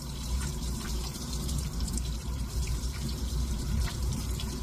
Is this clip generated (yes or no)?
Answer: yes